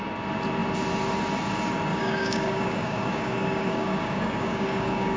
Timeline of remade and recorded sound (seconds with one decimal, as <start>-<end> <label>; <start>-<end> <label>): 0.0-1.9 recorded; 1.9-5.2 remade